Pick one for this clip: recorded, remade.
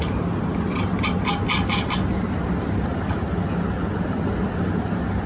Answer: recorded